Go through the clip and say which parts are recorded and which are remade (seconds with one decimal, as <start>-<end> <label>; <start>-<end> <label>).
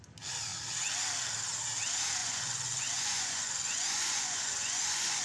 0.0-2.2 recorded; 2.2-5.2 remade